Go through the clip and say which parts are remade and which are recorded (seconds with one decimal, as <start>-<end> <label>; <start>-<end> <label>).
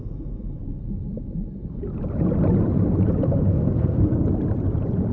0.0-3.5 recorded; 3.5-4.0 remade; 4.0-5.1 recorded